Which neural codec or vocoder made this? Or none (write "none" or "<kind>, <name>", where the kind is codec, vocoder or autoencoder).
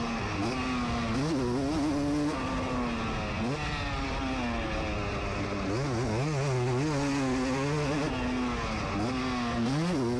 none